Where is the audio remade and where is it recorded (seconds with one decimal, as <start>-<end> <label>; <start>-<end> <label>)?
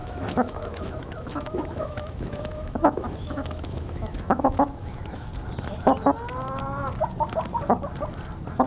0.0-5.3 remade; 5.3-8.7 recorded